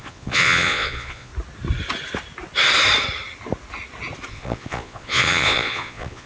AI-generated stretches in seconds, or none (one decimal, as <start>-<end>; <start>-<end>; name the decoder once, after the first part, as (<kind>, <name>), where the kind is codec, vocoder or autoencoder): 0.0-1.3 (vocoder, Vocos); 4.3-6.3